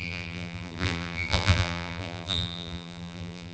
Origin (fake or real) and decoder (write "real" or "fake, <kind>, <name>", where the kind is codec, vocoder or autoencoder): fake, vocoder, BigVGAN v2